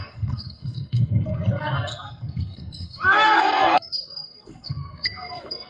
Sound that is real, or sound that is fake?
fake